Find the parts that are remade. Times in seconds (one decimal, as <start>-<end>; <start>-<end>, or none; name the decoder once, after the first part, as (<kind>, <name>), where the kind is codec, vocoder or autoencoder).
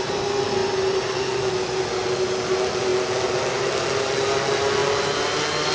none